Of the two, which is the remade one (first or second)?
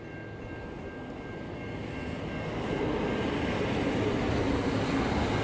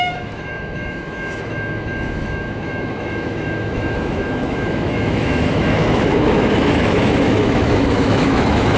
second